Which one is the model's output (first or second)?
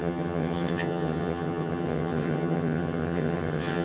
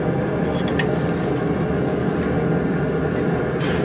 first